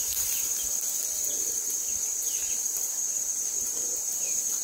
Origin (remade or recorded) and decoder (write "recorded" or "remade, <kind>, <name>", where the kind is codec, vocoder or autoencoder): remade, vocoder, BigVGAN v2